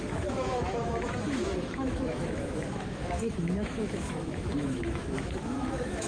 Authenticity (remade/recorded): remade